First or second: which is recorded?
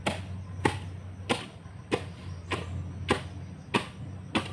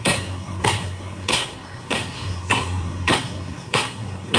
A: first